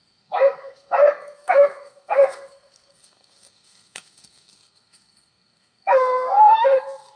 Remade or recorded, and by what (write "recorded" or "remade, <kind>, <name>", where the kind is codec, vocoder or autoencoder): remade, codec, SNAC